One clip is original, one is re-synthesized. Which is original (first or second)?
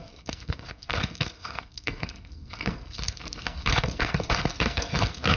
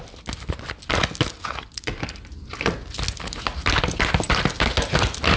second